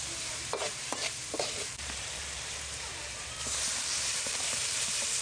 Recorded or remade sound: remade